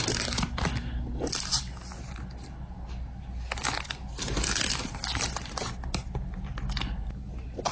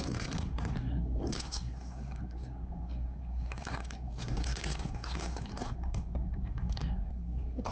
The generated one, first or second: second